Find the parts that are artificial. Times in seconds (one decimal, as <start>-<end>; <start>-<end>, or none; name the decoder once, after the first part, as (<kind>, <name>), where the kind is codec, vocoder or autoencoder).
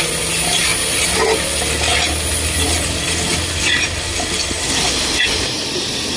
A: none